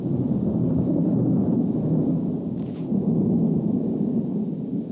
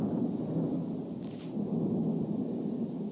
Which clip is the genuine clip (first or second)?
second